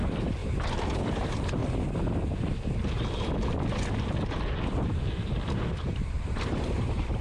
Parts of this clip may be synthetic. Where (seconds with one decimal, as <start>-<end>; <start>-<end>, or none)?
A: 0.0-1.6; 5.9-7.2